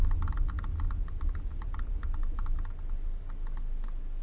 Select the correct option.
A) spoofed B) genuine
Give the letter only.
B